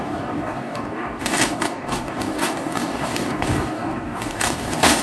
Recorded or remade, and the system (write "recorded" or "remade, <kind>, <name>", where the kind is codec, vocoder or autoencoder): remade, codec, DAC